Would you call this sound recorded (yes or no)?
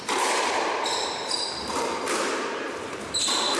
yes